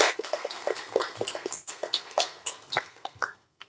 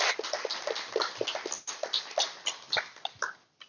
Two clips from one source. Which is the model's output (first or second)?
first